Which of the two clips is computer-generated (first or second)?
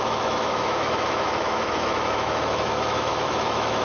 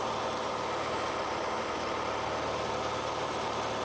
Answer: first